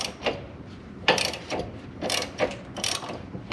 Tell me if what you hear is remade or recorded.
remade